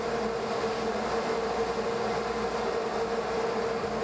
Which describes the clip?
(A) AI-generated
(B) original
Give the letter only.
B